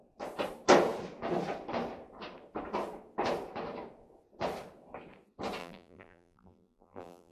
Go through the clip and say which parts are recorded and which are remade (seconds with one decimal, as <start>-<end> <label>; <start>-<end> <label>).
0.0-5.6 recorded; 5.6-7.3 remade